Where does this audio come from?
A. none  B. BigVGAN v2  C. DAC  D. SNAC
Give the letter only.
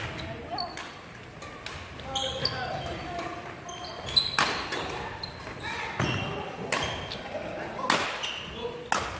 A